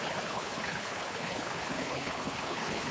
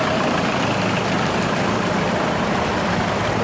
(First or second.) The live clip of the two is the second